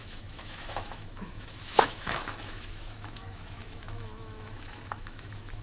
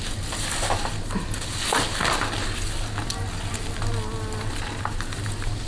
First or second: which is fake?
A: first